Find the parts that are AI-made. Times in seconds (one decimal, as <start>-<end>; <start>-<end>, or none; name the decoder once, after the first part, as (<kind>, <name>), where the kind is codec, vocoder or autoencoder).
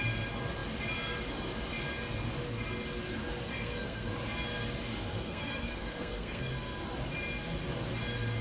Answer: 3.5-4.1 (codec, SNAC); 5.1-6.5